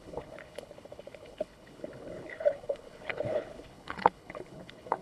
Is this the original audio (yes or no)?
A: no